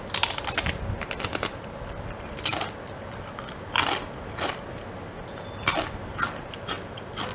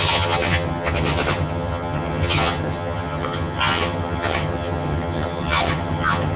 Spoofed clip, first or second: second